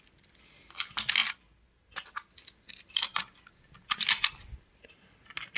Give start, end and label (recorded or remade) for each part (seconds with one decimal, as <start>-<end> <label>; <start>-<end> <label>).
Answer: 0.0-1.2 recorded; 1.2-2.3 remade; 2.3-5.6 recorded